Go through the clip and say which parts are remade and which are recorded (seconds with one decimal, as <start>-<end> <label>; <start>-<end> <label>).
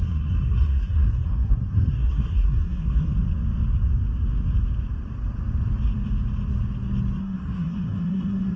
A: 0.0-3.1 remade; 3.1-7.2 recorded; 7.2-8.6 remade